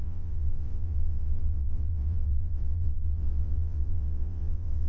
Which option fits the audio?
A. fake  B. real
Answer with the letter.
A